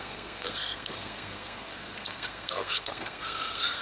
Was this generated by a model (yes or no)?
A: yes